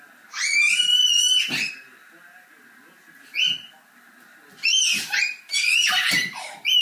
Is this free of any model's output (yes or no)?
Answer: yes